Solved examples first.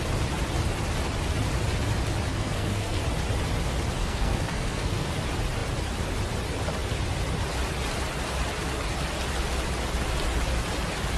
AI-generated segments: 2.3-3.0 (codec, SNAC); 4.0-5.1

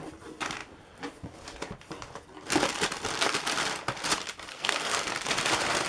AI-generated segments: 4.5-5.1 (codec, SNAC)

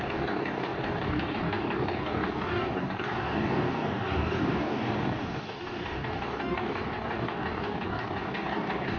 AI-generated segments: 0.0-9.0 (codec, DAC)

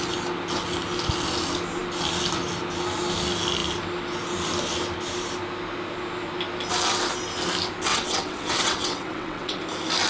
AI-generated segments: 7.9-9.6 (vocoder, WaveNeXt)